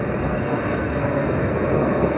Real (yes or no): no